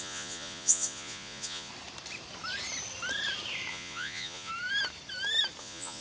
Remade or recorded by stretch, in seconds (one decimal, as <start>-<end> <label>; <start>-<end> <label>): 0.0-1.7 remade; 1.7-3.7 recorded; 3.7-4.5 remade; 4.5-5.6 recorded; 5.6-6.0 remade